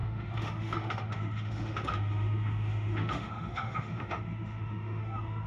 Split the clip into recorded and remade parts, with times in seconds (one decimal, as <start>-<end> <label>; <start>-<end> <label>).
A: 0.0-5.5 remade